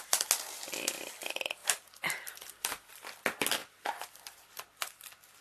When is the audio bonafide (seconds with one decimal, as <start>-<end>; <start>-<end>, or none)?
0.0-1.6; 2.9-3.6; 4.4-5.4